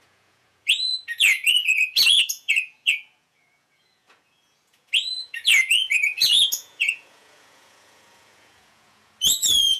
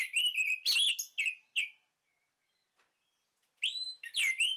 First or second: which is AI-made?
first